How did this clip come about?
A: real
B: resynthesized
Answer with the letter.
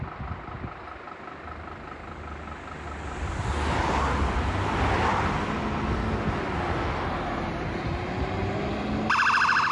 A